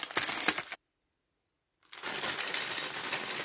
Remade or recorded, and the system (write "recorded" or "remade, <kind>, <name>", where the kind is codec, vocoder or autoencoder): recorded